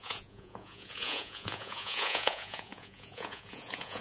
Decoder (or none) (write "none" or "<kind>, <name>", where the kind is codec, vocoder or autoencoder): vocoder, Vocos